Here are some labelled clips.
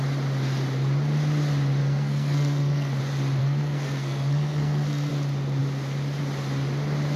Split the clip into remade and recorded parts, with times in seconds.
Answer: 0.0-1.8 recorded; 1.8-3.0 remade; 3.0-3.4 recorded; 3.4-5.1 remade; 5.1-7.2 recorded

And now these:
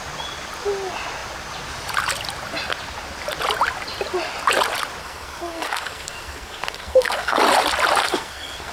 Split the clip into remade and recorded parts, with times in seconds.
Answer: 0.0-5.0 recorded; 5.0-7.4 remade; 7.4-8.0 recorded; 8.0-8.7 remade